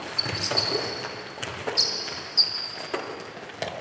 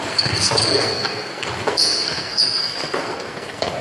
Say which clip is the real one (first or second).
first